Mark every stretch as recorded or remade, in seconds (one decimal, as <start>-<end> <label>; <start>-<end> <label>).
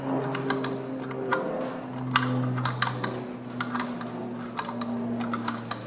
0.0-5.9 recorded